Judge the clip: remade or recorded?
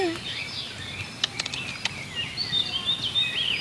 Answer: recorded